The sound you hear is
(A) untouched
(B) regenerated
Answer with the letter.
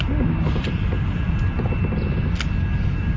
A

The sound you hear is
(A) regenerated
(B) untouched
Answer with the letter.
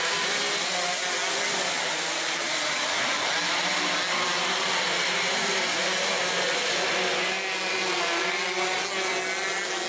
B